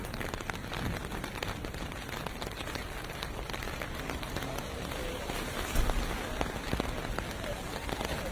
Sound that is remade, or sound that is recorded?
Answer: recorded